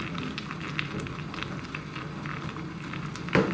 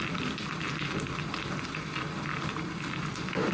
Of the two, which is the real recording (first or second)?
first